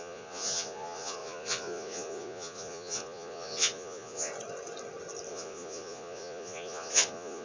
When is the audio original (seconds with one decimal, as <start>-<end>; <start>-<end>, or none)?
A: 4.3-5.3